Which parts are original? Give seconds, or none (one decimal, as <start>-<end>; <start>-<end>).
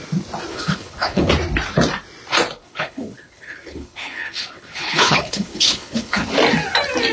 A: 0.0-0.5; 1.3-2.6; 6.3-7.1